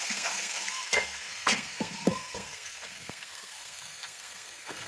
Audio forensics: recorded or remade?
remade